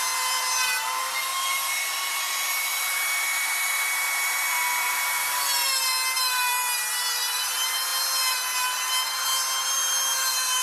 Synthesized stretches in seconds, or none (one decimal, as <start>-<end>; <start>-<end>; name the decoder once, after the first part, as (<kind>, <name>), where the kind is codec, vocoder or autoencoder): 0.0-5.6 (vocoder, BigVGAN v2); 6.2-10.6